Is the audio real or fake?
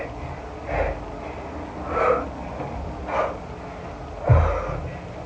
real